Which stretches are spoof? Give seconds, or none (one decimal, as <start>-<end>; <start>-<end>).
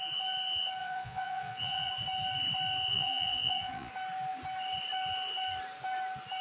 0.8-1.9; 2.9-3.9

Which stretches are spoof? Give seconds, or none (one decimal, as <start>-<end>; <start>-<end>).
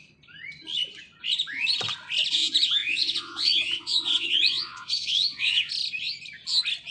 2.8-5.7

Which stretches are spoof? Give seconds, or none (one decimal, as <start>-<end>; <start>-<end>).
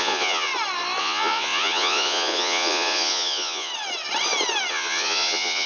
0.0-0.5; 1.0-3.7; 4.7-5.7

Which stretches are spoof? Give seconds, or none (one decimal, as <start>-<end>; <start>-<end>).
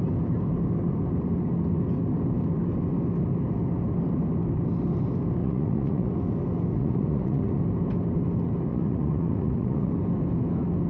5.4-6.1; 6.7-7.6; 8.7-9.9